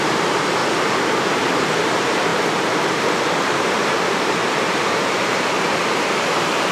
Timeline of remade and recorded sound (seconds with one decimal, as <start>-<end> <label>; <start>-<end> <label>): 0.0-0.6 remade; 0.6-1.5 recorded; 1.5-2.3 remade; 2.3-3.0 recorded; 3.0-6.7 remade